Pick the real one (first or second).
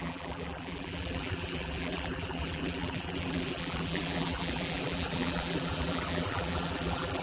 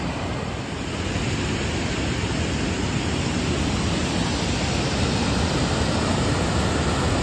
second